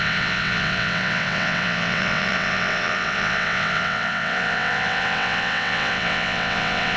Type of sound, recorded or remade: remade